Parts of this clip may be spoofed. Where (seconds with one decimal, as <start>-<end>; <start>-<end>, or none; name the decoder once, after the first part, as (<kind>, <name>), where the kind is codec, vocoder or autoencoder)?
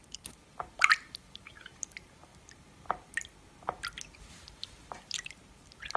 0.6-2.3 (vocoder, BigVGAN v2); 4.3-6.0